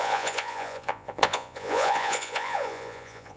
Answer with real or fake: fake